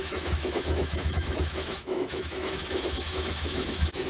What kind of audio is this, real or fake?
fake